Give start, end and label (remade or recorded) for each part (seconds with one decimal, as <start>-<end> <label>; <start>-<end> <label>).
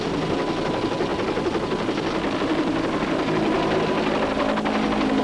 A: 0.0-5.2 recorded